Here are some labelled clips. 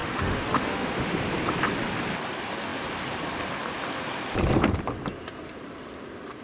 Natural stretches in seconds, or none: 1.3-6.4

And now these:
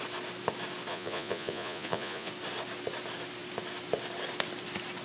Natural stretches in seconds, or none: 0.0-0.9; 2.3-5.0

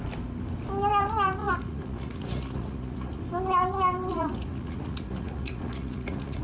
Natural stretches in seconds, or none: 0.0-1.4; 3.2-4.1

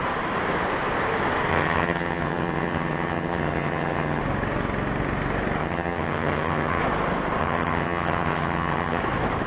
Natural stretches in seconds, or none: 0.0-1.5; 4.2-5.6; 6.8-7.4; 9.0-9.5

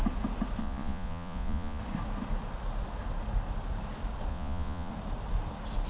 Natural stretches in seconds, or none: 0.0-0.6; 1.8-4.3; 4.9-5.9

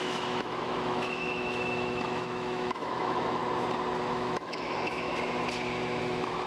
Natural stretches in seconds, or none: 3.4-4.1; 5.1-6.0